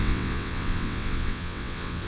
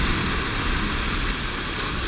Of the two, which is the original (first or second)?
second